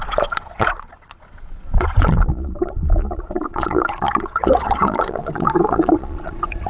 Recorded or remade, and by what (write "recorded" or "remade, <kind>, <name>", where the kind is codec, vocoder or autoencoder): remade, vocoder, Vocos